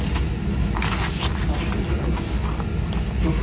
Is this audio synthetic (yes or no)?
no